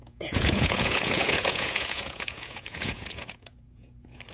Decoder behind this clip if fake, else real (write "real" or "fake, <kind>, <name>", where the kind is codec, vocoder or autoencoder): fake, vocoder, Vocos